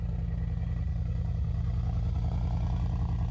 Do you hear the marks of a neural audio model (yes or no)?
no